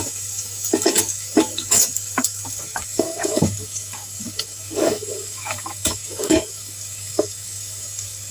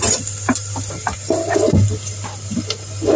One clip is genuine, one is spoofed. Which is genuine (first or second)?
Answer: second